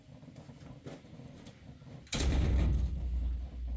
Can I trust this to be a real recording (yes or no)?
yes